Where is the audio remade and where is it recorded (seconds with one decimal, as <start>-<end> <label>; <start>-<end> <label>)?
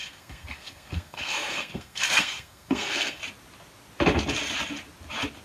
0.0-3.2 remade; 3.2-5.4 recorded